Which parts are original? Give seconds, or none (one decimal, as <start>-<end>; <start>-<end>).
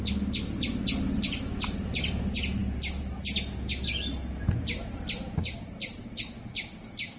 0.0-7.2